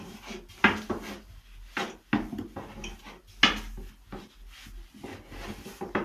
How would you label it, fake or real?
real